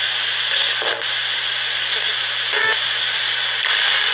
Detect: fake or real real